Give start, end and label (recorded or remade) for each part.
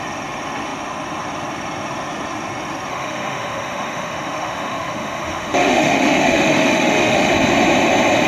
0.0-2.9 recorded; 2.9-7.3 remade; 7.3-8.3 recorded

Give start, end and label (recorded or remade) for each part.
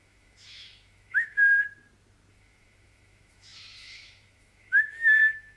0.0-1.4 remade; 1.4-2.3 recorded; 2.3-5.6 remade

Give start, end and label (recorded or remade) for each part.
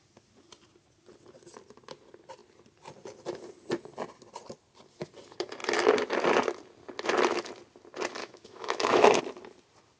0.0-8.2 recorded; 8.2-9.2 remade; 9.2-10.0 recorded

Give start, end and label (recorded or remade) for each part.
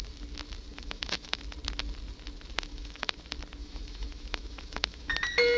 0.0-0.7 recorded; 0.7-1.4 remade; 1.4-2.7 recorded; 2.7-3.2 remade; 3.2-3.6 recorded; 3.6-5.1 remade; 5.1-5.6 recorded